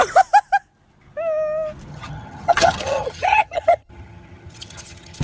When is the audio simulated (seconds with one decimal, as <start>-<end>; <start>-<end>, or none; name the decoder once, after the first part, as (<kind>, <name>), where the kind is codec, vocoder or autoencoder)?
1.9-5.2 (vocoder, HiFi-GAN)